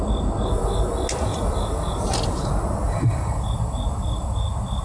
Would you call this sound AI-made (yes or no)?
no